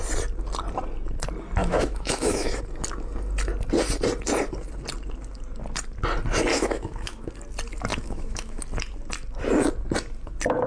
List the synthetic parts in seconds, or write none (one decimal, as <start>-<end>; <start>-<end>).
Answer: 1.6-2.6; 6.5-7.3; 7.9-8.6